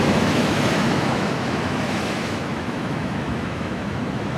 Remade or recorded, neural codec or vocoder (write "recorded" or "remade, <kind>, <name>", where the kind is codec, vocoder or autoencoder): remade, autoencoder, DAC-VAE